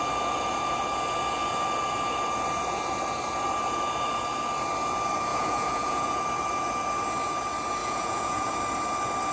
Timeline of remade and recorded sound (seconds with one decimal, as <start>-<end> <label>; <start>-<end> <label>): 0.0-5.3 recorded; 5.3-6.2 remade; 6.2-7.8 recorded; 7.8-8.5 remade; 8.5-9.3 recorded